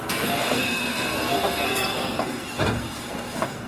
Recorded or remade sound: remade